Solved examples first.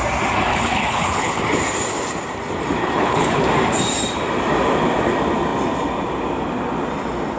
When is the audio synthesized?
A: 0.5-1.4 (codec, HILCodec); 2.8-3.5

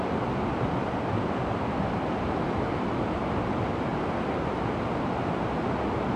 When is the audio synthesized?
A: none

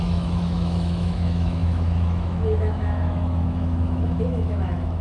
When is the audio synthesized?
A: 0.0-5.0 (autoencoder, DAC-VAE)

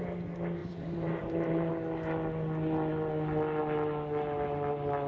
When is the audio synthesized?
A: 0.6-1.7 (vocoder, BigVGAN v2)

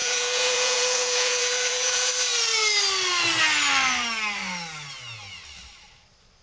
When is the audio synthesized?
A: 0.0-2.1 (vocoder, Vocos)